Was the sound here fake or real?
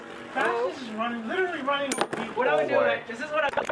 real